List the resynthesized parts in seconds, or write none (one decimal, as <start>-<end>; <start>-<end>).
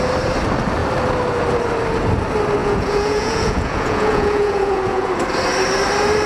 2.6-5.1